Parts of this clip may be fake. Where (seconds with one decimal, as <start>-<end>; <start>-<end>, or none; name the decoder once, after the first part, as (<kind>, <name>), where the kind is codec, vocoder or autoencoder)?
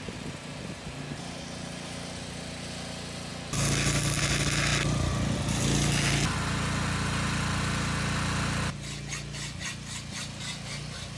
none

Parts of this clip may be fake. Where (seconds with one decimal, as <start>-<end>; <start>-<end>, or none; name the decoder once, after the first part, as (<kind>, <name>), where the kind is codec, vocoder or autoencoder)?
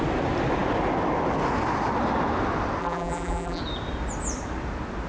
2.8-3.6 (vocoder, BigVGAN v2)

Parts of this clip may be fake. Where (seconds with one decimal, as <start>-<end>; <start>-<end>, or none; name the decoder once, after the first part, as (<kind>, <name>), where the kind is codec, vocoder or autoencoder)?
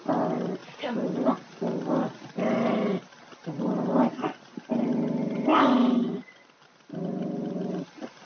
none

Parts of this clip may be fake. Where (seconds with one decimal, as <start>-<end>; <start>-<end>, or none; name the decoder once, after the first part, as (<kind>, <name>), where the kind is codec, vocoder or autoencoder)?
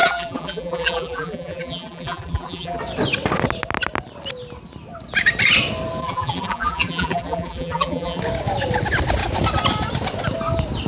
0.0-2.8 (vocoder, BigVGAN v2); 6.0-8.2